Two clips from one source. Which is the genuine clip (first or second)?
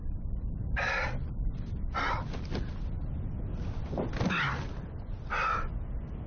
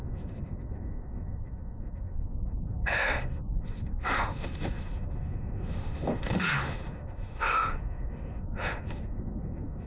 first